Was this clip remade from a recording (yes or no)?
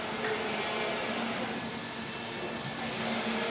no